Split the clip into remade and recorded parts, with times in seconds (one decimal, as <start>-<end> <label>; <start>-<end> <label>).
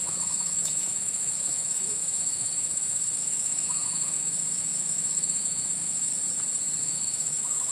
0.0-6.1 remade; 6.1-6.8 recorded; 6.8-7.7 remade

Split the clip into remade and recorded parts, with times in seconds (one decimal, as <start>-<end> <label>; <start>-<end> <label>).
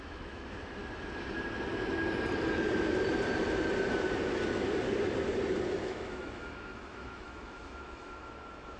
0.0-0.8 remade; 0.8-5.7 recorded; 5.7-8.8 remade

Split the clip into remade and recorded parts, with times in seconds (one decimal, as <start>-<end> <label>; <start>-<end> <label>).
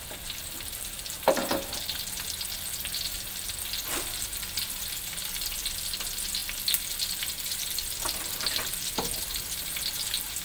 0.0-10.4 recorded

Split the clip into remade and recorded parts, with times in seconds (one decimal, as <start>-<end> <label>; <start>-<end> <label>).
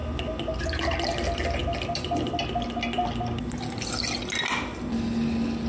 0.0-5.7 recorded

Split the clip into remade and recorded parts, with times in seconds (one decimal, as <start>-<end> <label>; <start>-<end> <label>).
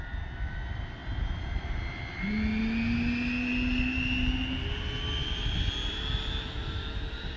0.0-7.4 recorded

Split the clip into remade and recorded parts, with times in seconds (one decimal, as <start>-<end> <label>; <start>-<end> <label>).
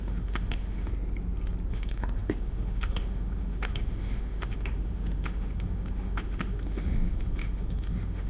0.0-0.9 remade; 0.9-1.7 recorded; 1.7-8.3 remade